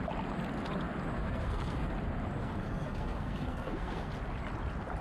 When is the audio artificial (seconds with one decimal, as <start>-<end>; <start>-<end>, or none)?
1.2-1.9; 2.4-4.1